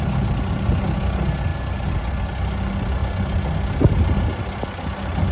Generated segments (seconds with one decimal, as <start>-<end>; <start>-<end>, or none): none